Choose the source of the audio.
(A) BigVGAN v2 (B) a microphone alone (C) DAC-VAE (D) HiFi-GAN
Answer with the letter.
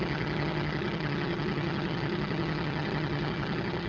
D